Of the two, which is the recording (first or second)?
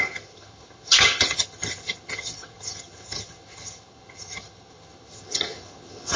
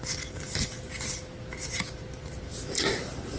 second